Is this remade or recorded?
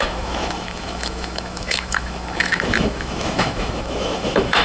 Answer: remade